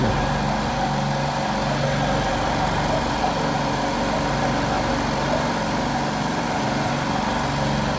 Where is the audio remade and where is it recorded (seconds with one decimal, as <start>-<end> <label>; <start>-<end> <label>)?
0.0-8.0 recorded